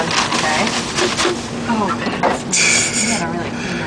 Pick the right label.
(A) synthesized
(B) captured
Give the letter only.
B